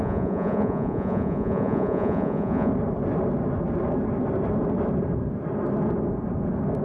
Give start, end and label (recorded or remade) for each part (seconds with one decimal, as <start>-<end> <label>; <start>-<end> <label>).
0.0-2.7 remade; 2.7-6.8 recorded